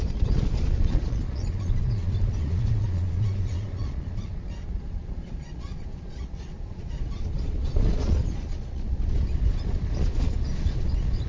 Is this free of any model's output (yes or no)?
no